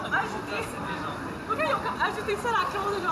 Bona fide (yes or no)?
no